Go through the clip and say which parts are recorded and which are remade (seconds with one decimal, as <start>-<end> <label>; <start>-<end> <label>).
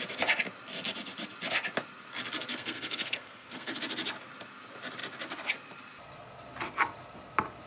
0.0-2.5 recorded; 2.5-3.8 remade; 3.8-7.7 recorded